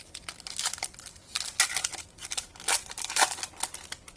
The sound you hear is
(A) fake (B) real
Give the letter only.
B